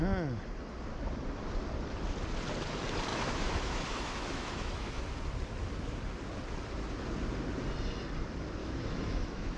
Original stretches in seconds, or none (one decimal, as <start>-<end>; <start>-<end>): 0.0-3.1; 5.0-8.6